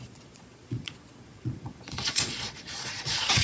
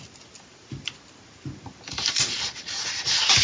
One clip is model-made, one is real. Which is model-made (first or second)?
first